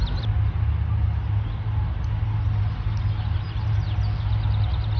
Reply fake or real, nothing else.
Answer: real